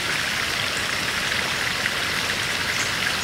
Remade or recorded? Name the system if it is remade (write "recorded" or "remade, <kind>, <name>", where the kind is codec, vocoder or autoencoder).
recorded